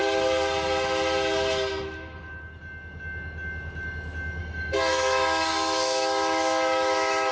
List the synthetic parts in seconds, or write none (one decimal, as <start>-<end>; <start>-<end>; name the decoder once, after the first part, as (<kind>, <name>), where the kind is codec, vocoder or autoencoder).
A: 4.4-7.3 (autoencoder, DAC-VAE)